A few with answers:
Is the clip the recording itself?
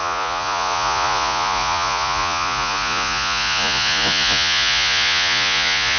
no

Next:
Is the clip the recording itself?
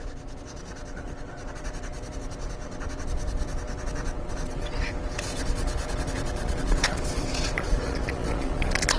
no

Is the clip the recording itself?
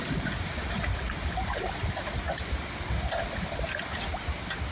yes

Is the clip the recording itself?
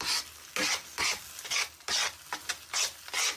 yes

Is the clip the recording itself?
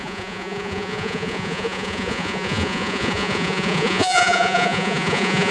no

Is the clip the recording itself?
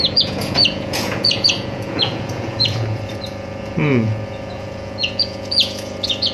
no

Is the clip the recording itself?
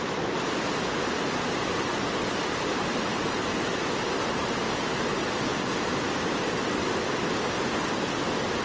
yes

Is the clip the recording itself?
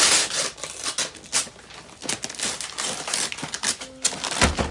yes